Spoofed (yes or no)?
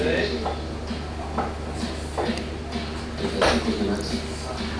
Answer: no